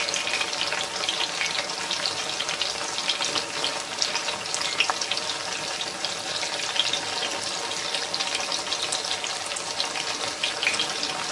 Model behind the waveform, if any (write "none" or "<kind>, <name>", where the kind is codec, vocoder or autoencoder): none